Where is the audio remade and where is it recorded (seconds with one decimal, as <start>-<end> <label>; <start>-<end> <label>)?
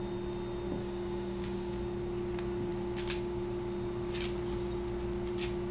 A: 0.0-0.8 recorded; 0.8-1.8 remade; 1.8-5.7 recorded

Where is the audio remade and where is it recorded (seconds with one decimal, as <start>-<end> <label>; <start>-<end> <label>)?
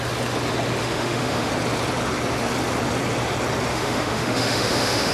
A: 0.0-0.8 recorded; 0.8-1.5 remade; 1.5-3.7 recorded; 3.7-5.1 remade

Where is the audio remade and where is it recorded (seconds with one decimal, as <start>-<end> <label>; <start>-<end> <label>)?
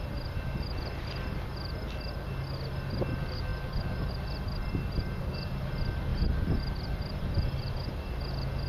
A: 0.0-6.1 recorded; 6.1-7.2 remade; 7.2-8.7 recorded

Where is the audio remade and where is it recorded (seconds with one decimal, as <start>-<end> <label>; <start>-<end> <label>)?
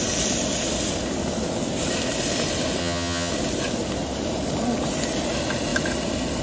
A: 0.0-2.8 recorded; 2.8-3.3 remade; 3.3-6.4 recorded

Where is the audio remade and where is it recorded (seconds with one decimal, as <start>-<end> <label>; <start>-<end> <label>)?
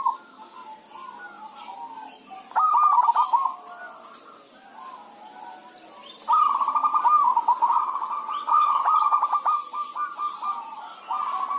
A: 0.0-7.3 recorded; 7.3-8.8 remade; 8.8-11.6 recorded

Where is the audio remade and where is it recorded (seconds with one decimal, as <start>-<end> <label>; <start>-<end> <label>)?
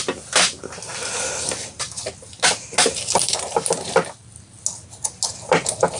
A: 0.0-6.0 recorded